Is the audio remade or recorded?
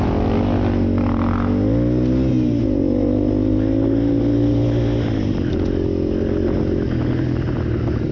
recorded